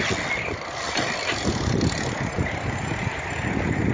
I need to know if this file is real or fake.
real